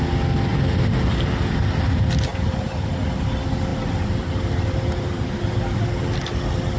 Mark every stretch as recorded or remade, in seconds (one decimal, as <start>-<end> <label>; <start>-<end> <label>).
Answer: 0.0-0.5 recorded; 0.5-1.5 remade; 1.5-2.3 recorded; 2.3-2.9 remade; 2.9-3.7 recorded; 3.7-6.0 remade; 6.0-6.8 recorded

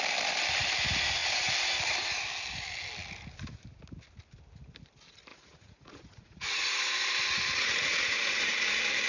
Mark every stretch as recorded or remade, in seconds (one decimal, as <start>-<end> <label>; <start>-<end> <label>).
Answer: 0.0-5.3 recorded; 5.3-8.7 remade; 8.7-9.1 recorded

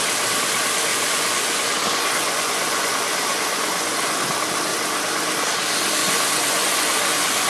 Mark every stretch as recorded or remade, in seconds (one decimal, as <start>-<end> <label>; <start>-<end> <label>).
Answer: 0.0-0.9 recorded; 0.9-4.2 remade; 4.2-6.0 recorded; 6.0-7.5 remade